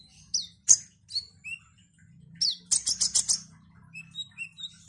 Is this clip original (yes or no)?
yes